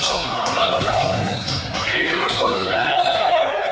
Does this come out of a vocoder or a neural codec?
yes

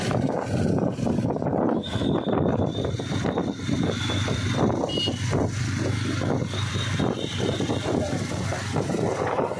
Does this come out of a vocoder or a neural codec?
yes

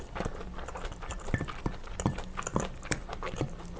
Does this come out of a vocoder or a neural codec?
no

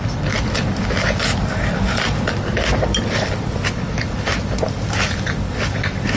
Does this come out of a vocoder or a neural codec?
yes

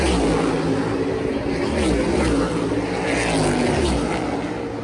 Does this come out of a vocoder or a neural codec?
no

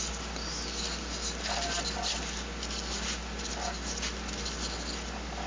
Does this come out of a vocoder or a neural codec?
no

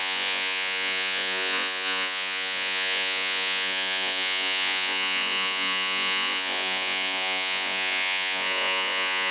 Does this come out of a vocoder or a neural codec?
yes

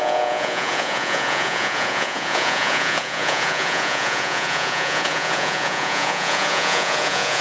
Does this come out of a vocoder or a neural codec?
yes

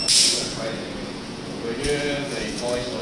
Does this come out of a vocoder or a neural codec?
yes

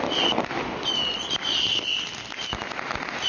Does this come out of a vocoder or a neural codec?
no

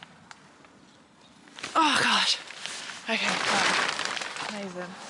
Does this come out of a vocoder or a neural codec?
no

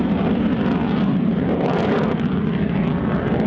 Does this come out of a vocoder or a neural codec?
no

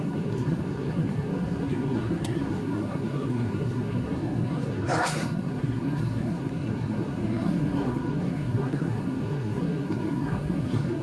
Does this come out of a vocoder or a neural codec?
yes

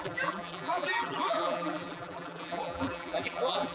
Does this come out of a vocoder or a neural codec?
yes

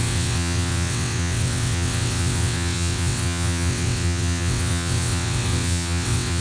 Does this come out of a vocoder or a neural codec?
yes